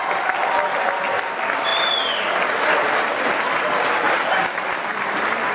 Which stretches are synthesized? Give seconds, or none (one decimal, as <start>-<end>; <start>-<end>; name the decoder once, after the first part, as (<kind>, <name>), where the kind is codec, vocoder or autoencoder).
none